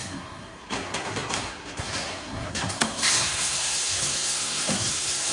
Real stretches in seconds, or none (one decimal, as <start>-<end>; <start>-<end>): none